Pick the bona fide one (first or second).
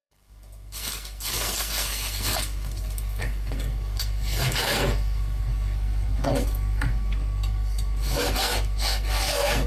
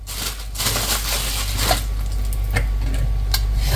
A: second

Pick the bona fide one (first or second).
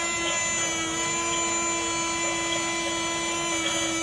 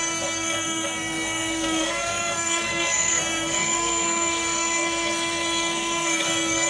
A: first